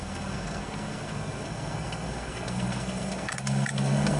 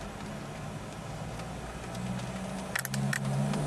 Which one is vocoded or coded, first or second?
first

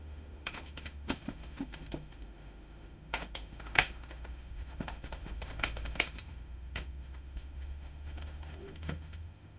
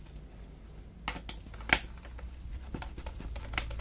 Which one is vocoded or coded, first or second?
first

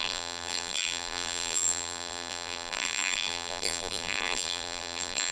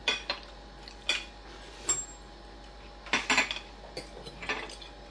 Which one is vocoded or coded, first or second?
first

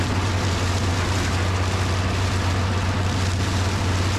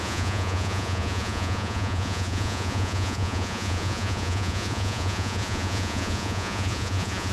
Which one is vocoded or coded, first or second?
second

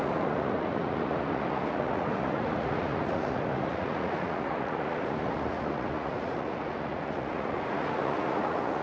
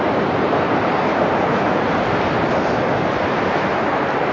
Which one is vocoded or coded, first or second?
first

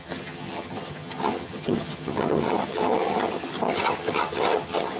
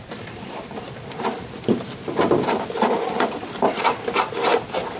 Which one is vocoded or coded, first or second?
first